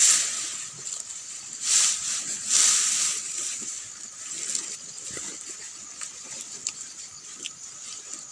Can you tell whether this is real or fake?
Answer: real